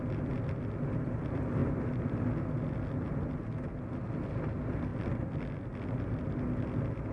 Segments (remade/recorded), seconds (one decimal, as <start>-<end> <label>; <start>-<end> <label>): 0.0-7.1 recorded